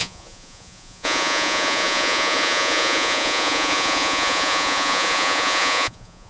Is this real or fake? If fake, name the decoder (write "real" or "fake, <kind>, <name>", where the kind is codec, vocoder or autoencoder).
fake, vocoder, Vocos